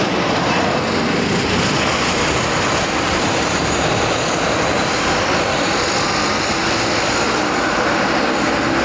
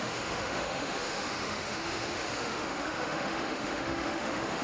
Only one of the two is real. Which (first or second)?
first